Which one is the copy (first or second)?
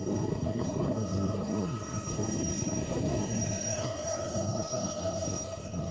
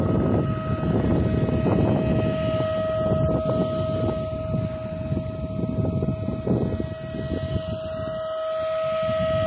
first